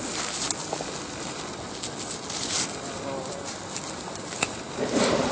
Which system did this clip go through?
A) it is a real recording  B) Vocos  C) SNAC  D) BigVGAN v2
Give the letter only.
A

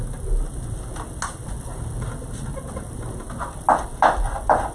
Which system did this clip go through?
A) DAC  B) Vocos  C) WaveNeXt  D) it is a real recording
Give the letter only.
D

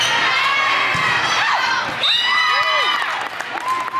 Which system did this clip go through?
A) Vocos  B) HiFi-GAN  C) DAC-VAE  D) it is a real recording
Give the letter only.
D